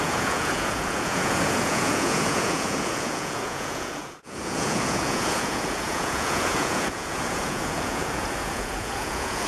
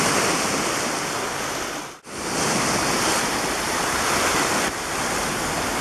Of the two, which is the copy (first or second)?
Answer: first